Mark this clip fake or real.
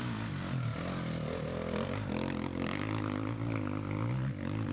real